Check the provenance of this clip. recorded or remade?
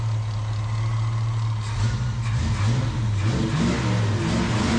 recorded